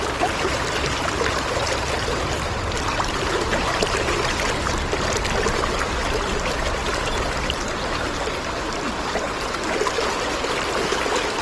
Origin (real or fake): real